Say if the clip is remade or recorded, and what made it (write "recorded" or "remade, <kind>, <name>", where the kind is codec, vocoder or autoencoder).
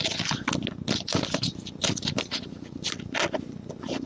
recorded